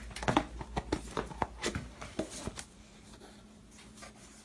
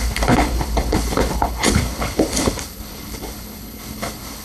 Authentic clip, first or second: first